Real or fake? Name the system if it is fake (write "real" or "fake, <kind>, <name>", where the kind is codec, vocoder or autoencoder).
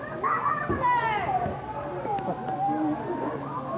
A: real